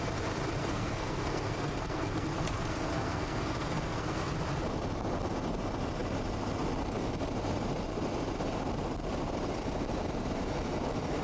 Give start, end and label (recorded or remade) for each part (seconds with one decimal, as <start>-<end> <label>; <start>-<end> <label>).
0.0-0.6 recorded; 0.6-4.3 remade; 4.3-11.2 recorded